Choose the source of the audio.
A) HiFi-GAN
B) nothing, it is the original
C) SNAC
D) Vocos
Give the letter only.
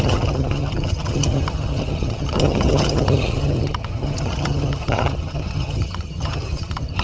A